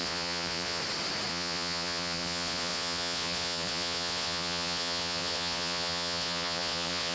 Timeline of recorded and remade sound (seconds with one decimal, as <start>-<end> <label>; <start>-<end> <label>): 0.0-0.8 remade; 0.8-1.3 recorded; 1.3-7.1 remade